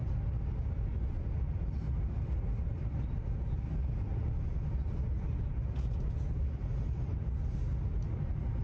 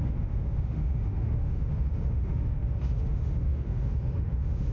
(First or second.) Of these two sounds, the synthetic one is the second